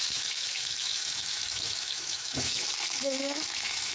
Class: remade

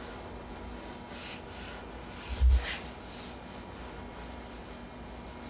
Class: recorded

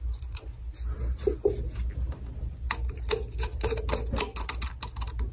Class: recorded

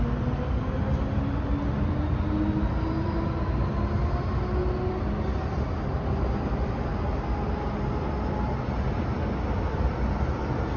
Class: recorded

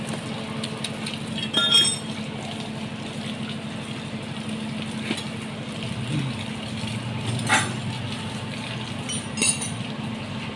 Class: recorded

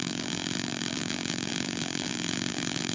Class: remade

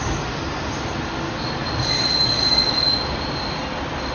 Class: recorded